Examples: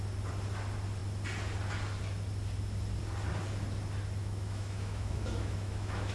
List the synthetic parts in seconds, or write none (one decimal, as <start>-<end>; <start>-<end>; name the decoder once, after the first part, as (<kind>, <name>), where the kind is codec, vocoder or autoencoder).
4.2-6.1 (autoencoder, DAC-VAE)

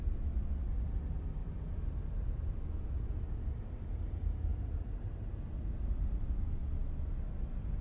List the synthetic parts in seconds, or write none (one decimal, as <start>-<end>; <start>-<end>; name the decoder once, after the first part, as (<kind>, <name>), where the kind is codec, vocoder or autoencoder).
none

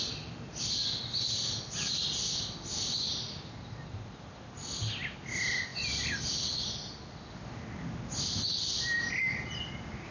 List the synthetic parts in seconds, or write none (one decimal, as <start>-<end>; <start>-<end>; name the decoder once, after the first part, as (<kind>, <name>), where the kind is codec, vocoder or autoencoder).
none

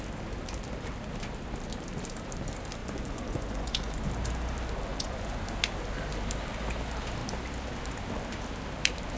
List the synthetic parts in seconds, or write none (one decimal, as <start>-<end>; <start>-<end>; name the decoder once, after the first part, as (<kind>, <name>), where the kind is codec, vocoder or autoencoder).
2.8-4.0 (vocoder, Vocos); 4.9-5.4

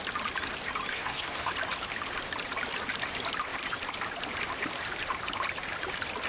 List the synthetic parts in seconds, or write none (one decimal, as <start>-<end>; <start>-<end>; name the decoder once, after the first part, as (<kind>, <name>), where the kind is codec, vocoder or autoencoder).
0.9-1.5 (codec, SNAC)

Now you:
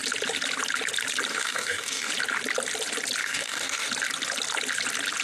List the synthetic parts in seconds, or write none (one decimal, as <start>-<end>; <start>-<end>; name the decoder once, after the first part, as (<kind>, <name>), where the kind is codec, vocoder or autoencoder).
1.3-2.1 (codec, DAC); 3.2-3.9

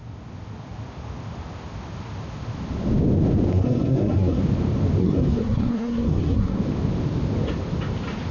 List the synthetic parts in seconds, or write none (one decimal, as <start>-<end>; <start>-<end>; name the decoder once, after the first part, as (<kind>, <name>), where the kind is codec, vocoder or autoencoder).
3.5-4.4 (codec, SNAC); 5.0-6.6

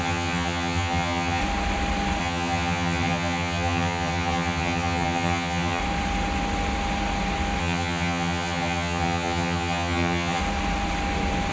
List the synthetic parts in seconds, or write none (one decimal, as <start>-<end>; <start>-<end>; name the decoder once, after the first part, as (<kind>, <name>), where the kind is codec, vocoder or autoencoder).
0.0-1.4 (vocoder, HiFi-GAN); 2.2-5.8; 7.6-10.4